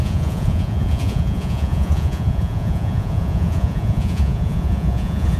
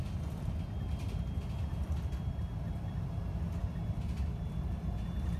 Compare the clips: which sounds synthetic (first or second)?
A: first